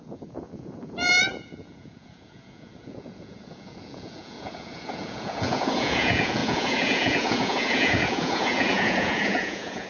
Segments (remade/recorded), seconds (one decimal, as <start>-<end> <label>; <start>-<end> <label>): 0.0-9.9 remade